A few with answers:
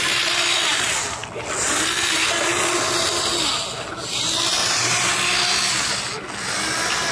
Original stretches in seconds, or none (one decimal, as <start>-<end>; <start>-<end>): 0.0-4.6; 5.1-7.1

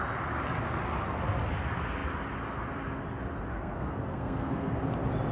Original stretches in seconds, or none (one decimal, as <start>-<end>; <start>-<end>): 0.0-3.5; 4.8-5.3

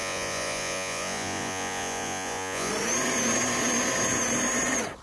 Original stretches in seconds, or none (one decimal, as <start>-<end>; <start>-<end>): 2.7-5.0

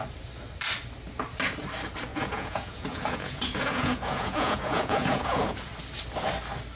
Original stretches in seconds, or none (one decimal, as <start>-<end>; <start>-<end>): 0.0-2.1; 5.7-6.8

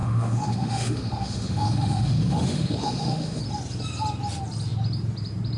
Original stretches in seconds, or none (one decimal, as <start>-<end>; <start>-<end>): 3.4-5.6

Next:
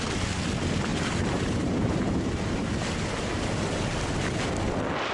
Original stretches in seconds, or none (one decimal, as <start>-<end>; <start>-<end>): 0.0-0.9; 2.7-5.1

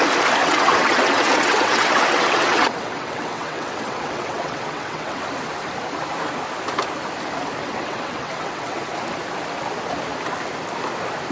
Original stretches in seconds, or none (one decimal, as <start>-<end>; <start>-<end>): 0.0-0.4; 5.2-7.6; 8.8-11.3